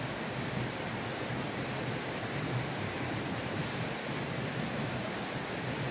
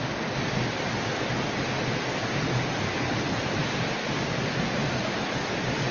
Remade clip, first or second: first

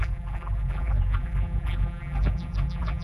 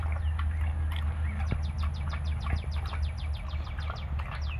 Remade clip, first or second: first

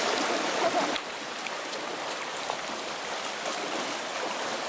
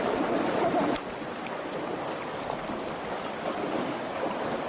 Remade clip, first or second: first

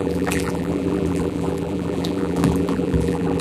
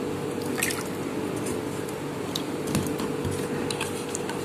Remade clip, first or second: first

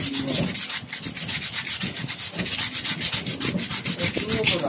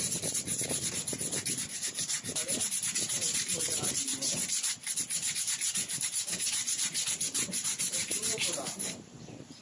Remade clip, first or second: second